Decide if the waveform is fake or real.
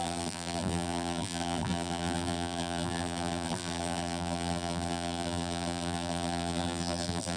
fake